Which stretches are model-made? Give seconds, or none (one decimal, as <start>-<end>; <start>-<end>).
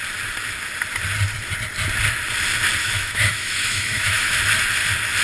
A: 2.8-4.4